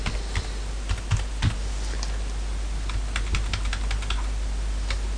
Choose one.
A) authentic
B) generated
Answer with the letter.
A